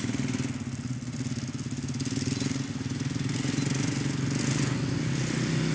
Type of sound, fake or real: real